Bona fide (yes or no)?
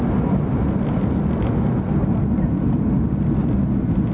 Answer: yes